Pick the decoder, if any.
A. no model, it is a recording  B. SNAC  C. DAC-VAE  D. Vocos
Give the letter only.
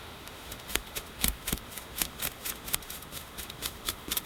C